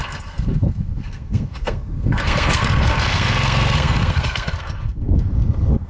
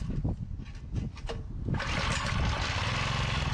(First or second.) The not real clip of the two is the first